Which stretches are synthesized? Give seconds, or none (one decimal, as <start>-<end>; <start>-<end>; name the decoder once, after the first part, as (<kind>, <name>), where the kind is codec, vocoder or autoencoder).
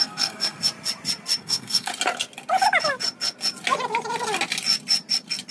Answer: 0.0-0.6 (codec, SNAC); 1.4-1.9